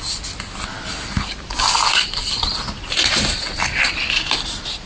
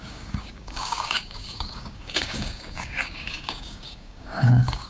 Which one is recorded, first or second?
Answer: first